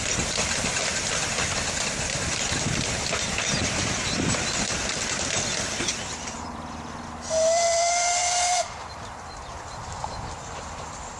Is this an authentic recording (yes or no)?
no